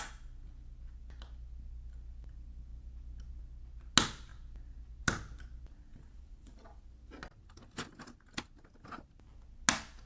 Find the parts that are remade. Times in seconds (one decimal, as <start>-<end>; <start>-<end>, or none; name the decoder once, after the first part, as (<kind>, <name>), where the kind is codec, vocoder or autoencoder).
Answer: 5.9-6.8 (vocoder, Vocos)